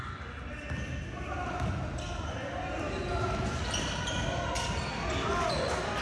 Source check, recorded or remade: recorded